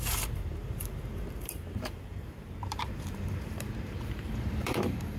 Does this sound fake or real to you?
fake